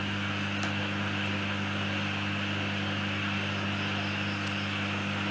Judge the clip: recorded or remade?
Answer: recorded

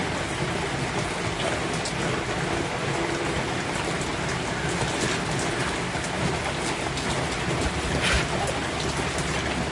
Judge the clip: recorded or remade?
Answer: recorded